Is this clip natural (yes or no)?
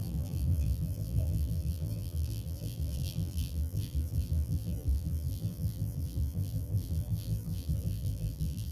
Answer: no